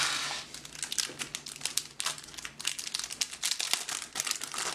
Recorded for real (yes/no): yes